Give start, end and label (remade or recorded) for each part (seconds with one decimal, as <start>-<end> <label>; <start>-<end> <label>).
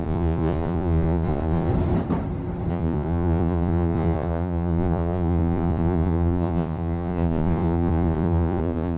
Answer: 0.0-1.7 remade; 1.7-2.7 recorded; 2.7-9.0 remade